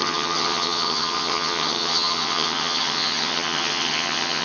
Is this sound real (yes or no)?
no